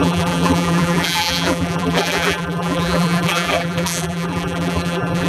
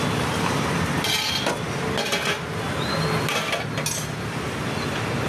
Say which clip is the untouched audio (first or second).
second